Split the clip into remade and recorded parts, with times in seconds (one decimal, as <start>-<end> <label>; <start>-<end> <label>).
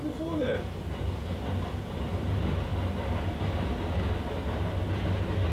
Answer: 0.0-5.5 recorded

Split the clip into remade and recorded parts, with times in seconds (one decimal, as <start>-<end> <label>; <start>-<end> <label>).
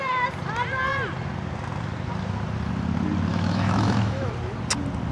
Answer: 0.0-3.3 recorded; 3.3-4.3 remade; 4.3-5.1 recorded